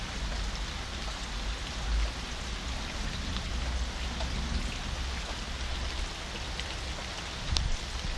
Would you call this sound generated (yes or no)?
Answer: no